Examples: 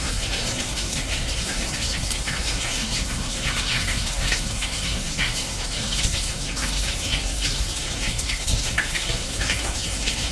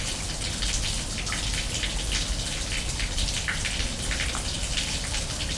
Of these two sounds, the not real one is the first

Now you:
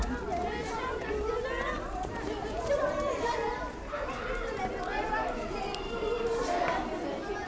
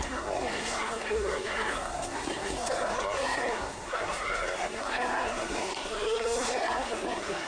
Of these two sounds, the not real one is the second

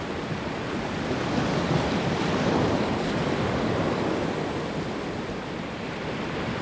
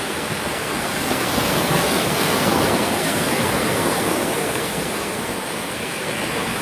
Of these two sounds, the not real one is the second